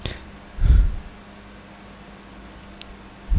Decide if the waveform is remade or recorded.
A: recorded